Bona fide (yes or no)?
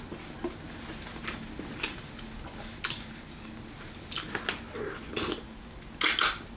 yes